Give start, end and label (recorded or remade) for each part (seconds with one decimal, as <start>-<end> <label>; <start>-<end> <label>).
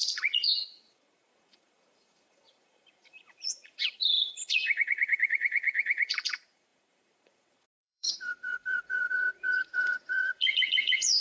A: 0.0-11.2 remade